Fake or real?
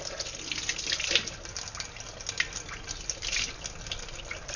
real